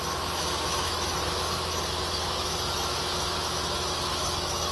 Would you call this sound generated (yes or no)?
yes